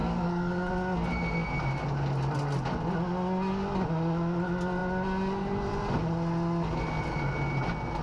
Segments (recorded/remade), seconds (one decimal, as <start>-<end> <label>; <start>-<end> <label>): 0.0-0.7 remade; 0.7-8.0 recorded